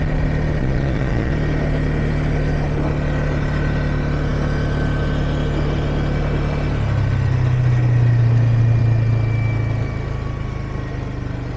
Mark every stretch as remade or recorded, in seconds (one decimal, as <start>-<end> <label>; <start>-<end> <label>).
0.0-0.6 recorded; 0.6-1.3 remade; 1.3-11.6 recorded